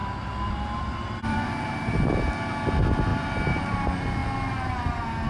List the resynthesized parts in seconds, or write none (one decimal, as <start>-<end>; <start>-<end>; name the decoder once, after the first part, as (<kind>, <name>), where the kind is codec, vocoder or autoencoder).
0.0-2.5 (vocoder, BigVGAN v2); 3.1-3.8